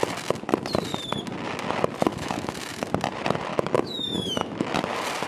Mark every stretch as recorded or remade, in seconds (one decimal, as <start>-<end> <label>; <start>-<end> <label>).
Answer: 0.0-2.1 recorded; 2.1-2.9 remade; 2.9-3.5 recorded; 3.5-4.7 remade; 4.7-5.3 recorded